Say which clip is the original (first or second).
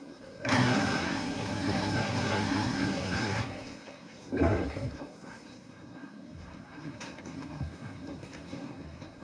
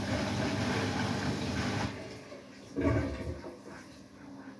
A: second